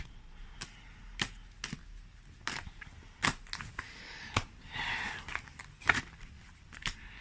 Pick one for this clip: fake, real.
real